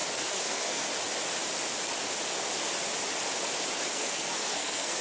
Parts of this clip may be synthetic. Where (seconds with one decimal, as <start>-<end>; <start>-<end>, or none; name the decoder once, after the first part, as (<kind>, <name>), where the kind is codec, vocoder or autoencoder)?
0.0-0.9 (codec, SNAC); 3.9-5.0